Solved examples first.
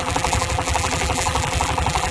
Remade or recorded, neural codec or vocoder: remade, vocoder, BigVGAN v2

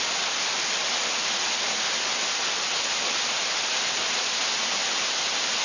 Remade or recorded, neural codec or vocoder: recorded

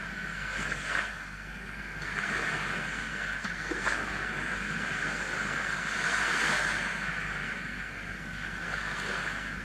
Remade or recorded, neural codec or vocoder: remade, codec, SNAC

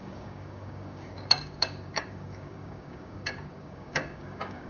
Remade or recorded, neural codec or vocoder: remade, codec, DAC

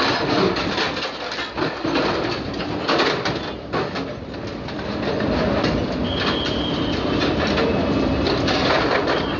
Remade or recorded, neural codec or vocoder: recorded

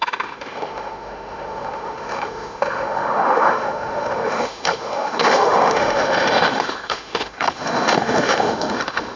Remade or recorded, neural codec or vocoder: remade, autoencoder, DAC-VAE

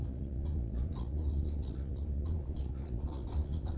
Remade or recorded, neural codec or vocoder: remade, vocoder, Vocos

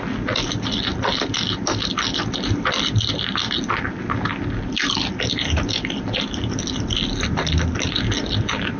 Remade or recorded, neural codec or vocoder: recorded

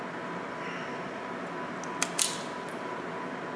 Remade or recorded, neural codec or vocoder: recorded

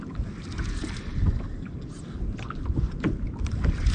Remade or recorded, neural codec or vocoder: recorded